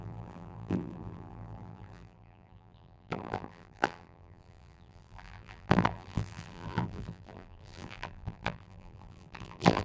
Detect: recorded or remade remade